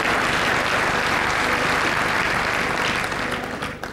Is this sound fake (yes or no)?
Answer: no